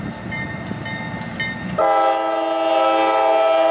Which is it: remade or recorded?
recorded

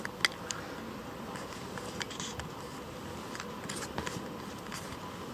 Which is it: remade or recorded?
recorded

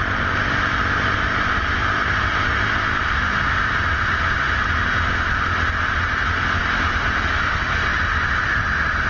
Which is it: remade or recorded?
recorded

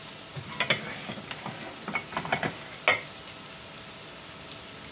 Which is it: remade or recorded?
recorded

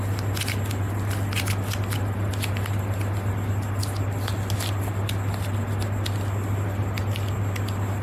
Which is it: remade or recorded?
recorded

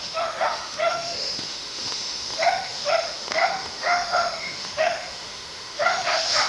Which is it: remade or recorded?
remade